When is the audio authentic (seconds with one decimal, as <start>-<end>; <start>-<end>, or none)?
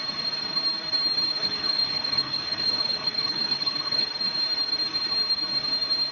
0.0-1.3; 4.1-6.1